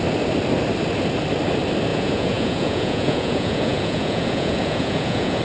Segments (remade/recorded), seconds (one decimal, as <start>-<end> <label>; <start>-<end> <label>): 0.0-1.9 recorded; 1.9-5.4 remade